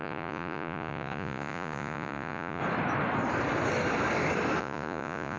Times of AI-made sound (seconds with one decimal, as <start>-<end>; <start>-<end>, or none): 0.0-2.6; 4.6-5.4